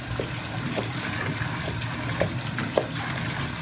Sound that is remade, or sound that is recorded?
recorded